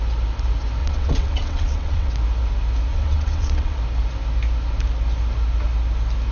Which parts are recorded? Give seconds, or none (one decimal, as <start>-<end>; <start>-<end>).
0.0-0.8; 2.1-2.9; 3.8-6.3